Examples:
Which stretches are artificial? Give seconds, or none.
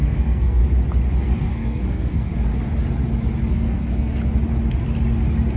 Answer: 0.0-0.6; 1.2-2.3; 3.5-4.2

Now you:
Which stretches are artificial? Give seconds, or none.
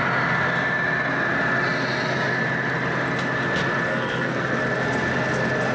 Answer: 3.9-4.6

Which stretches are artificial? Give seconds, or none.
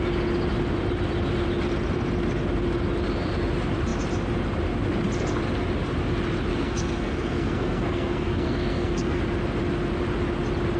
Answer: 6.5-9.2